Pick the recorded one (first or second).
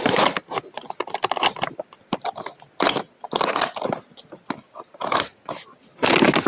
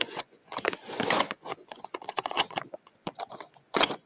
first